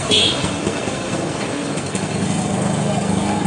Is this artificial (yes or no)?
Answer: yes